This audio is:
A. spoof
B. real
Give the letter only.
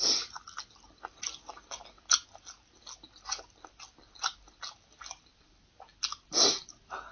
B